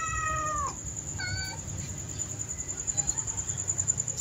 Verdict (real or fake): fake